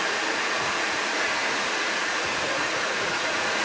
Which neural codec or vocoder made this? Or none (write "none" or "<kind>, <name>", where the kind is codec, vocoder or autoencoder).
vocoder, Vocos